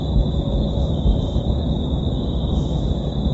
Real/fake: real